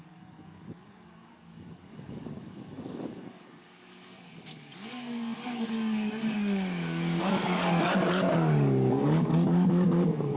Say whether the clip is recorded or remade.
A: remade